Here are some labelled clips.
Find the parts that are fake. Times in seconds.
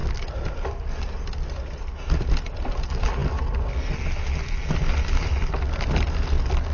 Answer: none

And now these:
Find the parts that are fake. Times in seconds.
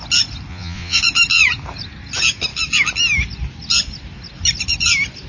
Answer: 0.5-1.0 (vocoder, Vocos)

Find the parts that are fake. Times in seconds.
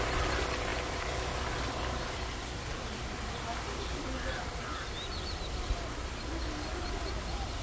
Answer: none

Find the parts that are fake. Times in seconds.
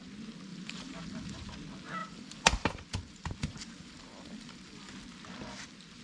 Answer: 0.5-1.5 (vocoder, BigVGAN v2); 2.0-4.9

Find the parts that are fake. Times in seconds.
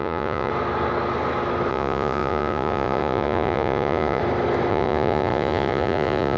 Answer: 0.0-0.5 (vocoder, Vocos); 1.7-4.2; 4.7-6.4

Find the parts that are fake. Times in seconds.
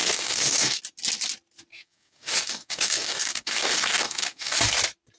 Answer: 0.0-0.8 (codec, DAC); 1.7-4.6